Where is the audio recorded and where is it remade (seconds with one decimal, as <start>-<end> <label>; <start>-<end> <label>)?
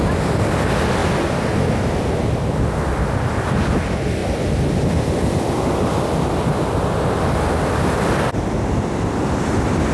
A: 0.0-9.9 recorded